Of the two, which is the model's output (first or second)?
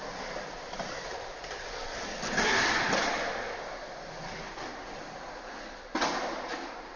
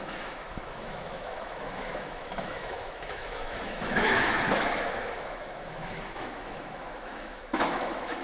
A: second